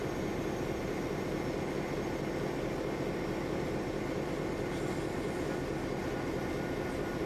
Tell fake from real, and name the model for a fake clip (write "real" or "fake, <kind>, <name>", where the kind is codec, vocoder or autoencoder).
real